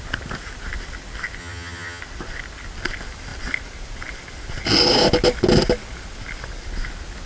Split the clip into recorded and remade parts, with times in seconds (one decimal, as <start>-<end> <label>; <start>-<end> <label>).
0.0-1.4 recorded; 1.4-2.0 remade; 2.0-7.3 recorded